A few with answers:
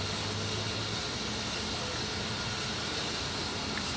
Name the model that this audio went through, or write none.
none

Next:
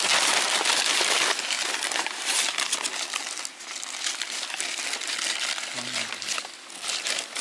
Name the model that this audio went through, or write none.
none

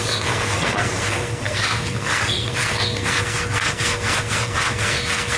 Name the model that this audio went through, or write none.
codec, SNAC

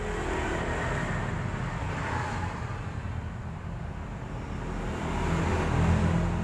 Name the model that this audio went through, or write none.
none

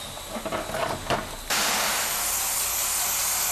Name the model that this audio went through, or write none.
none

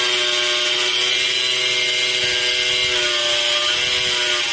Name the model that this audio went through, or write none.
none